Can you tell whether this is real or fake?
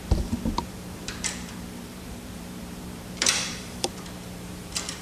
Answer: fake